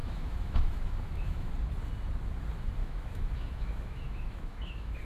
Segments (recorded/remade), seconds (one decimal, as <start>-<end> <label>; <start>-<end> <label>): 0.0-1.5 remade; 1.5-2.8 recorded; 2.8-5.0 remade